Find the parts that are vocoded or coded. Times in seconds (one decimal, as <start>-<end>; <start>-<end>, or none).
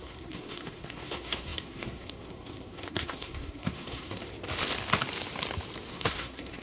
0.0-4.2; 5.9-6.6